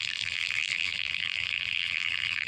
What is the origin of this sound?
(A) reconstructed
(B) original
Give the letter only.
A